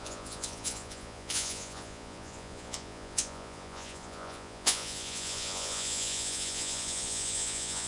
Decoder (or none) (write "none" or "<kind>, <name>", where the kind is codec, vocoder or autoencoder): vocoder, Vocos